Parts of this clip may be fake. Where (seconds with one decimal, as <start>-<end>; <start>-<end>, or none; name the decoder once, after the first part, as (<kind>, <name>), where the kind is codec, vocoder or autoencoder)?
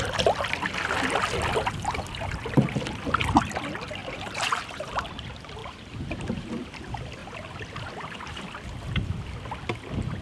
4.0-5.0 (vocoder, BigVGAN v2); 5.6-6.5